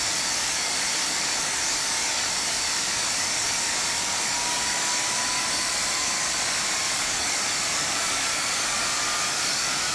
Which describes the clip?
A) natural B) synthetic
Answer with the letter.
B